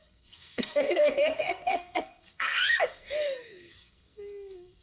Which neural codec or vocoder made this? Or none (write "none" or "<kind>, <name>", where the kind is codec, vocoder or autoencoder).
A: codec, SNAC